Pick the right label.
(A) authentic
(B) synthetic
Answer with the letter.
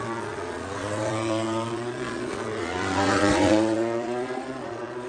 B